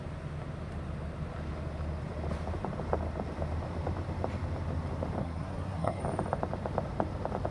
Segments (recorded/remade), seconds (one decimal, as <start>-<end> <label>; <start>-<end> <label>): 0.0-5.2 recorded; 5.2-6.0 remade; 6.0-7.5 recorded